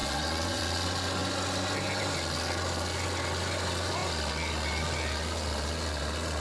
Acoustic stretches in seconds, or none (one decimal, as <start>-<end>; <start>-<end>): 0.6-6.4